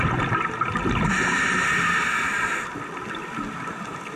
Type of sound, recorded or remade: recorded